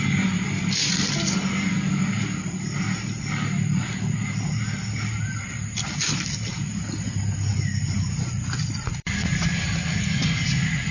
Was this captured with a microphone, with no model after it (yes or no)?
no